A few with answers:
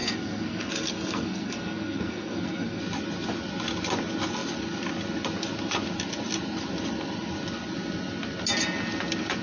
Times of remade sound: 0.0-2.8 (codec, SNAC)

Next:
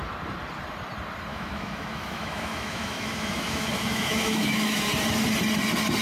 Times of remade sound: 1.3-4.9 (autoencoder, DAC-VAE)